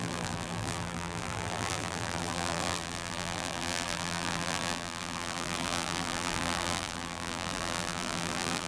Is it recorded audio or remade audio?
remade